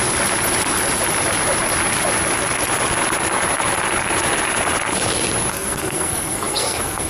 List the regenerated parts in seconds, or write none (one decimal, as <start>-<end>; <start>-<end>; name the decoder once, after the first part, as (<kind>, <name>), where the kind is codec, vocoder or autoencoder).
5.5-7.1 (codec, SNAC)